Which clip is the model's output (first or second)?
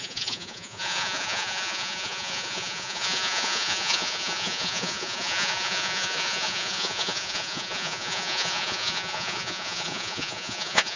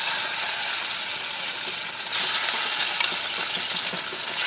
first